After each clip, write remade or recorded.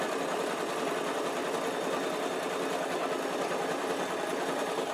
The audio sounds recorded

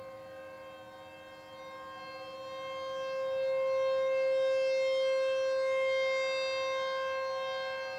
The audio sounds recorded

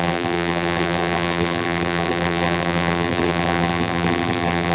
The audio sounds remade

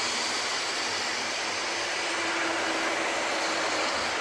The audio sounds recorded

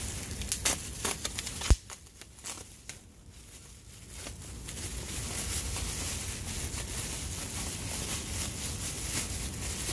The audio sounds recorded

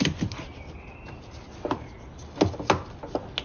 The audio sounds recorded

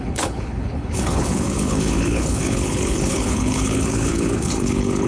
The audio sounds remade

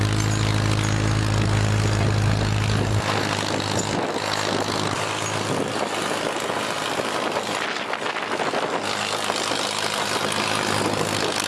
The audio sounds recorded